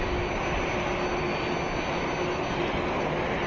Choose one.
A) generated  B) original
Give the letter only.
B